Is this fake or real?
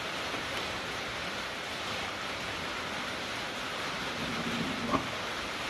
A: real